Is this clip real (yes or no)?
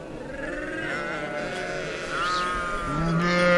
yes